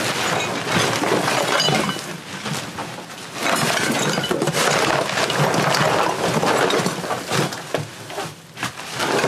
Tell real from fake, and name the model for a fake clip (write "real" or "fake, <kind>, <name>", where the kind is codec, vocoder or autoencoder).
real